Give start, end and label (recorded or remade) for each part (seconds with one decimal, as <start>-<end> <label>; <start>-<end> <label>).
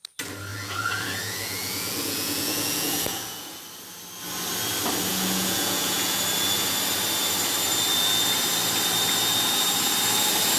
0.0-0.5 recorded; 0.5-3.6 remade; 3.6-5.1 recorded; 5.1-6.2 remade; 6.2-10.6 recorded